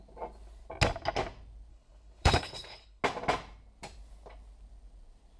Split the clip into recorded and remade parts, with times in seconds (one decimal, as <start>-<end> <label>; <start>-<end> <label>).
0.0-1.7 recorded; 1.7-3.0 remade; 3.0-5.4 recorded